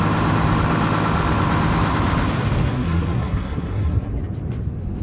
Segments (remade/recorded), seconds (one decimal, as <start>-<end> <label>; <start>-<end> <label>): 0.0-2.7 recorded; 2.7-4.1 remade; 4.1-5.0 recorded

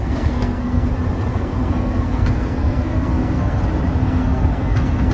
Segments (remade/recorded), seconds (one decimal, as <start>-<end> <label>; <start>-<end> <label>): 0.0-0.9 remade; 0.9-1.3 recorded; 1.3-3.6 remade; 3.6-4.0 recorded; 4.0-5.1 remade

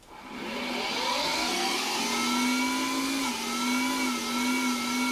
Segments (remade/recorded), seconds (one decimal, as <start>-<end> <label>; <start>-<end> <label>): 0.0-1.2 recorded; 1.2-2.0 remade; 2.0-5.1 recorded

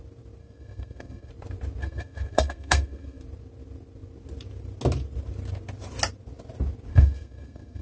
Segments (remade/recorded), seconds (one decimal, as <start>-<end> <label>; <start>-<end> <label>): 0.0-0.4 recorded; 0.4-1.3 remade; 1.3-1.8 recorded; 1.8-3.2 remade; 3.2-6.9 recorded; 6.9-7.8 remade

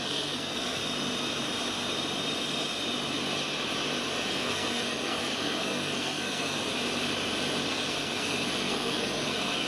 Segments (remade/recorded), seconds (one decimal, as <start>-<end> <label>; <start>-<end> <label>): 0.0-0.8 remade; 0.8-4.3 recorded; 4.3-6.7 remade; 6.7-7.7 recorded; 7.7-9.7 remade

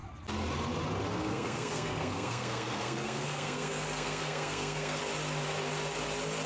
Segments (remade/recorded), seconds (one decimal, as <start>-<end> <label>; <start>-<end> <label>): 0.0-1.1 recorded; 1.1-5.0 remade; 5.0-6.5 recorded

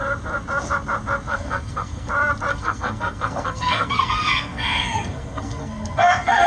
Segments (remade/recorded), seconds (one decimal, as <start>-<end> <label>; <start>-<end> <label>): 0.0-1.3 recorded; 1.3-2.1 remade; 2.1-2.5 recorded; 2.5-6.5 remade

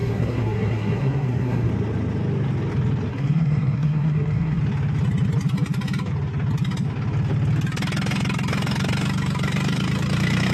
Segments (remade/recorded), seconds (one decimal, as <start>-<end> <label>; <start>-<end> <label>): 0.0-1.7 remade; 1.7-3.1 recorded; 3.1-4.6 remade; 4.6-10.5 recorded